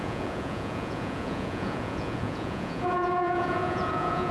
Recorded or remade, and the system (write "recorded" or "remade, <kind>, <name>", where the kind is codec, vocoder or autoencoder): remade, vocoder, Vocos